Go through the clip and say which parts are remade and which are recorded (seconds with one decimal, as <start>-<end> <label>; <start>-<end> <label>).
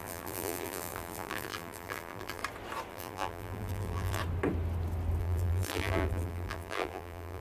0.0-2.4 remade; 2.4-2.9 recorded; 2.9-4.2 remade; 4.2-5.2 recorded; 5.2-7.4 remade